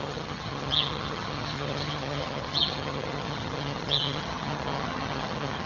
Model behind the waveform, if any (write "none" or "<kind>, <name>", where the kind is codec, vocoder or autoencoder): vocoder, HiFi-GAN